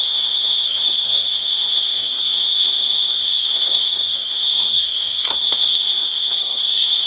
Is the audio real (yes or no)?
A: no